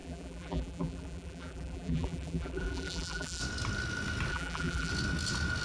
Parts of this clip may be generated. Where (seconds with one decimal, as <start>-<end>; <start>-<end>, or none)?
0.0-3.4; 4.3-4.9